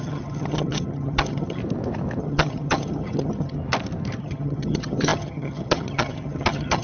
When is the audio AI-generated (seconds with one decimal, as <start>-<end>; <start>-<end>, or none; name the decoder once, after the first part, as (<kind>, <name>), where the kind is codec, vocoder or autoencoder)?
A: 0.0-1.6 (vocoder, HiFi-GAN); 2.2-3.6; 4.2-6.8